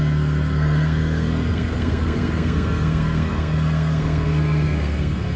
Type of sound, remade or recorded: remade